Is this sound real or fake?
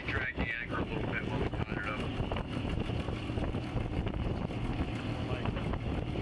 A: real